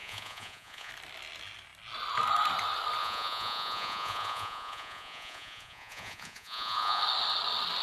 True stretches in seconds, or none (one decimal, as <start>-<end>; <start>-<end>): 0.9-3.0; 7.0-7.8